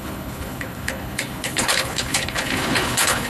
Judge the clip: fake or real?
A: fake